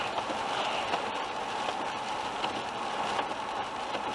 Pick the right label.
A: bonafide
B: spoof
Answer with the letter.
A